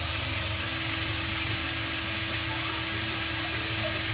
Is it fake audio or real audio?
real